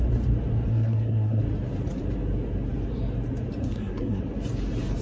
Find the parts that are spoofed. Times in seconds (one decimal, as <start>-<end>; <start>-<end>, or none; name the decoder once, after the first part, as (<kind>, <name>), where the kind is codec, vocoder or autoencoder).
0.7-1.4 (codec, SNAC); 3.6-4.2